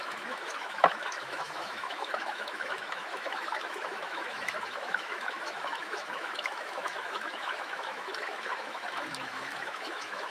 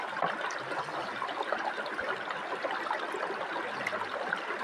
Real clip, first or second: second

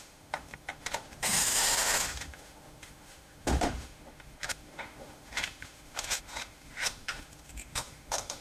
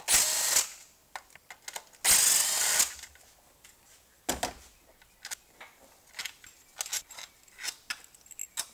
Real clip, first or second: second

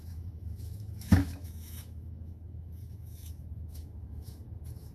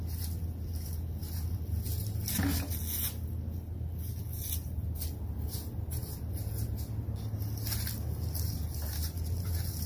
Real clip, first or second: second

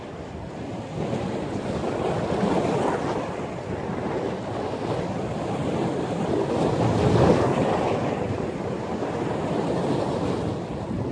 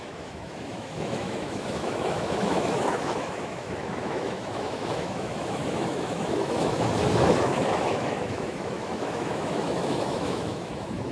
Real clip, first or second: first